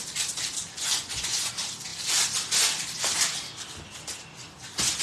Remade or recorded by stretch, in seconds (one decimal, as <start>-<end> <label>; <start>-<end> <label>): 0.0-0.6 recorded; 0.6-1.5 remade; 1.5-5.0 recorded